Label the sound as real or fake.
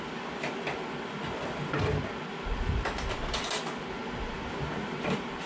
real